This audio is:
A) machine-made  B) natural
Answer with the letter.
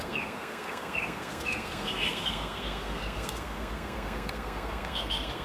A